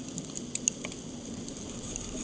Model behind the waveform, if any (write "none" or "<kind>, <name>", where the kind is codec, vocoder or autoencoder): none